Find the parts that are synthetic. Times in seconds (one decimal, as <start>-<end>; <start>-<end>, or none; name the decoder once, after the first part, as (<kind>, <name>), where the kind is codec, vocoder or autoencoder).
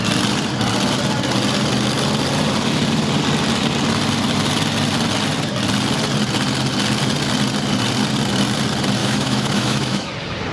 9.0-10.1 (autoencoder, DAC-VAE)